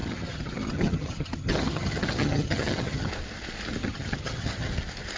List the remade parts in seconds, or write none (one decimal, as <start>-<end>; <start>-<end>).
0.0-3.1; 3.8-4.7

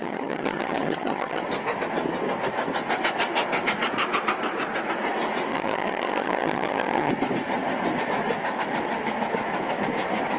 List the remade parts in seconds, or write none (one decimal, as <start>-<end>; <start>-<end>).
0.0-1.4; 5.5-7.1

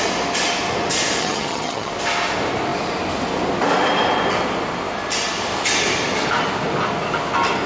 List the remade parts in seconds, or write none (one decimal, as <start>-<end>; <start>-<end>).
1.2-1.9

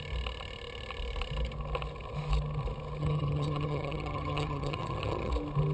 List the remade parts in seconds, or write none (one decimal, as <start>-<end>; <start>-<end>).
3.0-5.3

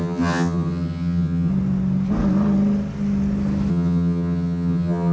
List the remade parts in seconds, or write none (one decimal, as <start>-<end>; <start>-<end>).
0.0-1.5; 3.7-5.1